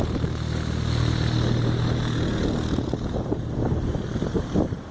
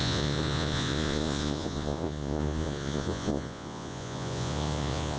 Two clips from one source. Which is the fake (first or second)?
second